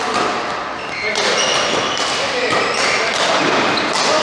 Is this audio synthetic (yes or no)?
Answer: no